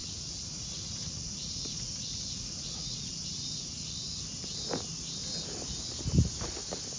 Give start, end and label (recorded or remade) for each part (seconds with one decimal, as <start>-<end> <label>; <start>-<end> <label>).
0.0-4.2 remade; 4.2-7.0 recorded